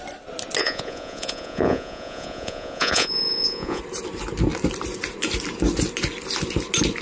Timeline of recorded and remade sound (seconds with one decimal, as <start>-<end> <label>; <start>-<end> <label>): 0.0-0.6 recorded; 0.6-3.8 remade; 3.8-7.0 recorded